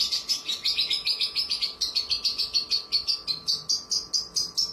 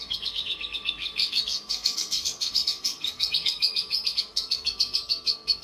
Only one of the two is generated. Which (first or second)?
second